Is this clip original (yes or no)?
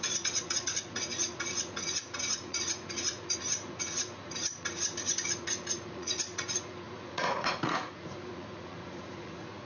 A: no